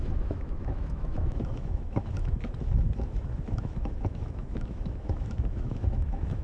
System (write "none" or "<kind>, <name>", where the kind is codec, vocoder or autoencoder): autoencoder, DAC-VAE